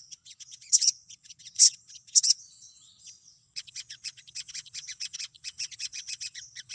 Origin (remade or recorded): remade